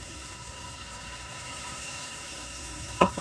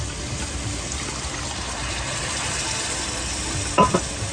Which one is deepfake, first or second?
first